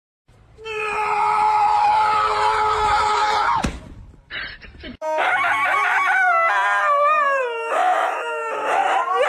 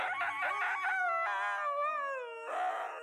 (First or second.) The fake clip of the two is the first